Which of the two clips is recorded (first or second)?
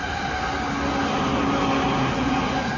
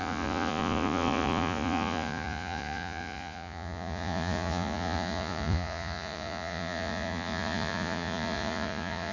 first